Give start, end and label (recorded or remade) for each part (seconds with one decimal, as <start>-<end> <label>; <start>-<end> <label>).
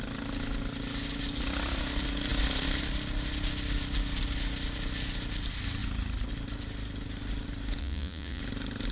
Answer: 0.0-7.8 recorded; 7.8-8.4 remade; 8.4-8.9 recorded